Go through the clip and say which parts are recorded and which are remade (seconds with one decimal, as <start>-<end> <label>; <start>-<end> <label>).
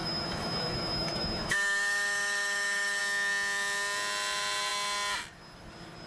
0.0-3.0 remade; 3.0-6.1 recorded